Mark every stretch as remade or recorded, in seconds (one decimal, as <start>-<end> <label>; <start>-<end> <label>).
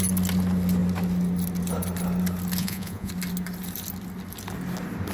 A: 0.0-2.6 recorded; 2.6-3.1 remade; 3.1-5.1 recorded